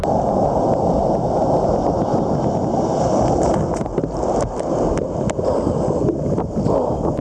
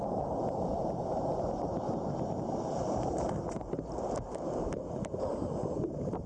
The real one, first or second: first